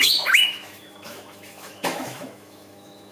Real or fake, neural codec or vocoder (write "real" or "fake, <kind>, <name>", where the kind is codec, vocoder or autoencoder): fake, autoencoder, DAC-VAE